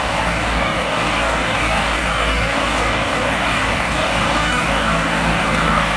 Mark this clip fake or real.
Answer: fake